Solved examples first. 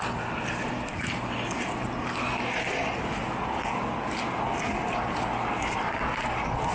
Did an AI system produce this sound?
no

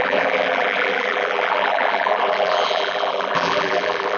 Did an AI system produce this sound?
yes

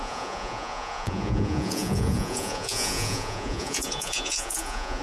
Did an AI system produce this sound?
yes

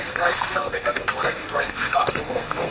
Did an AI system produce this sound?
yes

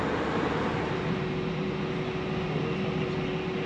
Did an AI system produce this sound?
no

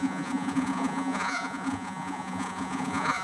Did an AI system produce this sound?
yes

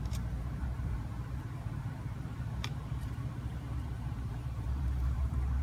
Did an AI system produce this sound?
yes